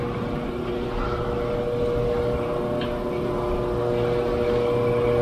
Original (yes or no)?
yes